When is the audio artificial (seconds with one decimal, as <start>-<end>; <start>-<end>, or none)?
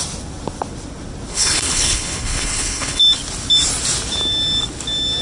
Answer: 1.3-3.0